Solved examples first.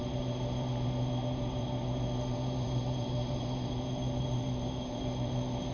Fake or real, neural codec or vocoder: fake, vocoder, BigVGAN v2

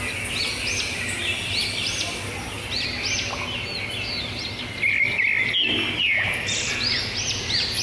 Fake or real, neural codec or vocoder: real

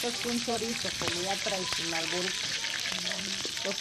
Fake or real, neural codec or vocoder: fake, vocoder, BigVGAN v2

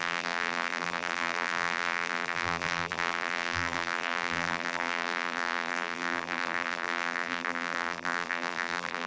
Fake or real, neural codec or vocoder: fake, vocoder, BigVGAN v2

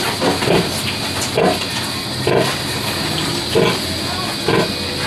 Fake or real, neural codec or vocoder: real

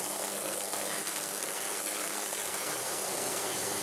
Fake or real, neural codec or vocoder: fake, codec, SNAC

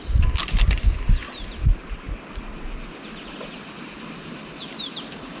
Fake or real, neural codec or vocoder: real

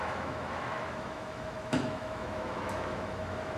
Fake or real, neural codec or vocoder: fake, autoencoder, DAC-VAE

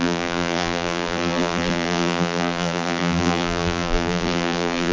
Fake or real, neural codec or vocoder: fake, vocoder, BigVGAN v2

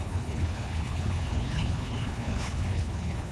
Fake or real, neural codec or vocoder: fake, codec, HILCodec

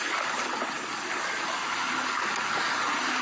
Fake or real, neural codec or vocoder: real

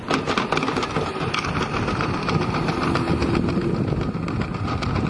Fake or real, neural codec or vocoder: real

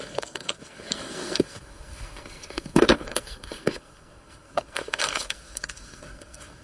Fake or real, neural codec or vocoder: fake, codec, SNAC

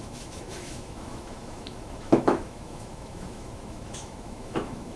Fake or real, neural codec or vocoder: fake, autoencoder, DAC-VAE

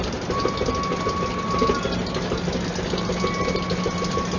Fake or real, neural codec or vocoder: real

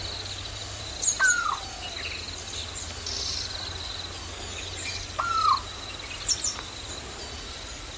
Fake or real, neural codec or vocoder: real